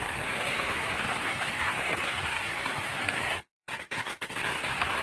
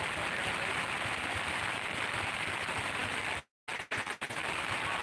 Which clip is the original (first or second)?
second